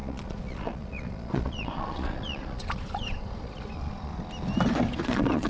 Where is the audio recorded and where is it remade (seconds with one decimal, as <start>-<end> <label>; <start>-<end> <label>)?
0.0-4.1 remade; 4.1-5.0 recorded; 5.0-5.5 remade